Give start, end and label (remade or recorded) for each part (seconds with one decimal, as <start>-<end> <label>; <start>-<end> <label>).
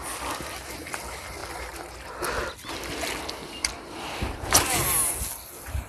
0.0-5.9 recorded